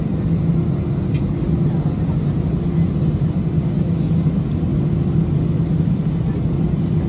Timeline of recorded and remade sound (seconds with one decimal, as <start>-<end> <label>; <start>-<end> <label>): 0.0-7.1 recorded